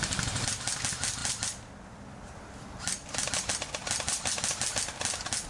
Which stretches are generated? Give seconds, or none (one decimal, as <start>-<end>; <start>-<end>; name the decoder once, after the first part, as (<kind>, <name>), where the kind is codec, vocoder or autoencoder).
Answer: 1.2-3.3 (vocoder, BigVGAN v2)